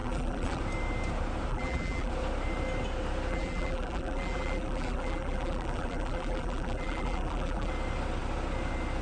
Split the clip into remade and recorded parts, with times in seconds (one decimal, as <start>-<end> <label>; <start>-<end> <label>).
0.0-0.6 remade; 0.6-1.5 recorded; 1.5-2.1 remade; 2.1-3.3 recorded; 3.3-7.7 remade; 7.7-9.0 recorded